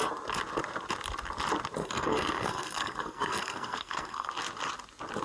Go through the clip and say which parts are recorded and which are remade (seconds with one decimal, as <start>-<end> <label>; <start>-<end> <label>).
0.0-1.8 recorded; 1.8-4.3 remade; 4.3-5.2 recorded